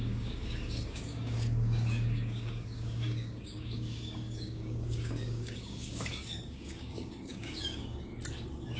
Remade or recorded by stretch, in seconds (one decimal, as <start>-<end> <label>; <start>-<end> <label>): 0.0-8.1 remade; 8.1-8.8 recorded